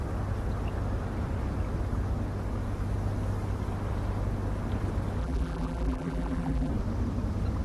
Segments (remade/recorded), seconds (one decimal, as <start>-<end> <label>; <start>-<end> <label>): 0.0-5.2 recorded; 5.2-6.7 remade; 6.7-7.6 recorded